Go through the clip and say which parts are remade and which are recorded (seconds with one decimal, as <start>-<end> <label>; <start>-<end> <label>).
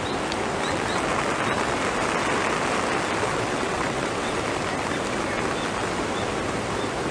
0.0-3.3 recorded; 3.3-4.4 remade; 4.4-7.1 recorded